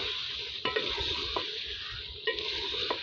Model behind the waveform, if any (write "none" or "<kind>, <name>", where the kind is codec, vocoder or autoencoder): none